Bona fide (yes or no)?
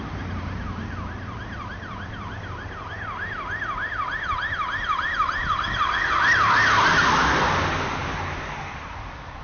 yes